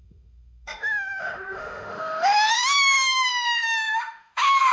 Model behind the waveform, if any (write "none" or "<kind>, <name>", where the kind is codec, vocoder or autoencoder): autoencoder, DAC-VAE